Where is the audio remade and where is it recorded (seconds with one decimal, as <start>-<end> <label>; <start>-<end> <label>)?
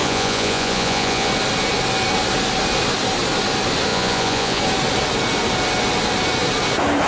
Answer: 0.0-1.3 remade; 1.3-3.9 recorded; 3.9-4.6 remade; 4.6-7.1 recorded